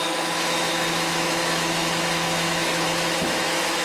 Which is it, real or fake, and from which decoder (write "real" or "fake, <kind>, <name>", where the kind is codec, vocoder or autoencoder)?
fake, autoencoder, DAC-VAE